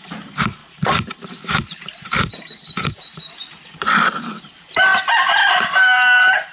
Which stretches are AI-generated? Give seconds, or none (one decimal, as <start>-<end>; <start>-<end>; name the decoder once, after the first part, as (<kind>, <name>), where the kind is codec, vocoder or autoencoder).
0.0-4.9 (vocoder, BigVGAN v2); 5.5-6.5